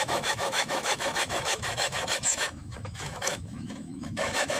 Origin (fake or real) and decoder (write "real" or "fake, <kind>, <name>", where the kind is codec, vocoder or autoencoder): fake, autoencoder, DAC-VAE